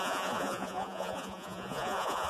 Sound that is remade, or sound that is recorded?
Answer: remade